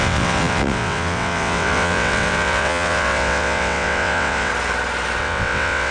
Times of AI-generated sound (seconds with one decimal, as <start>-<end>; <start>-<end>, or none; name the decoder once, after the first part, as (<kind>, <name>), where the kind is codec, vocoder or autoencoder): 0.0-4.5 (vocoder, WaveNeXt); 5.2-5.9